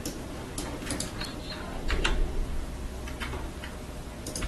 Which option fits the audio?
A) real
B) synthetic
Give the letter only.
A